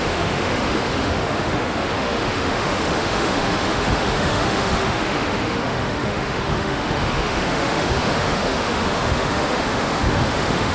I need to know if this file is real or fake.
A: fake